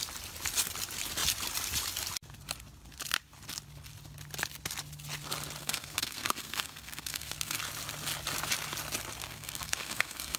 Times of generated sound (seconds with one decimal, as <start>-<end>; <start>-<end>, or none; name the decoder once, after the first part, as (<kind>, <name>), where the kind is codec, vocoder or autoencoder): 5.6-7.6 (codec, SNAC); 9.2-10.4